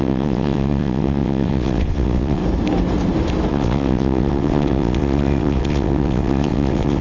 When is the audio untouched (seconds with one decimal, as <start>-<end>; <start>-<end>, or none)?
2.4-3.5